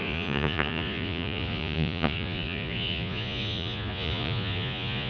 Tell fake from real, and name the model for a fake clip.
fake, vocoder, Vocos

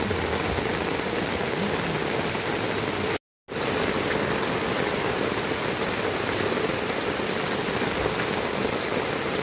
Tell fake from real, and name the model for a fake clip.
real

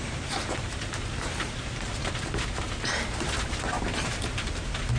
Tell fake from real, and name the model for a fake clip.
fake, vocoder, BigVGAN v2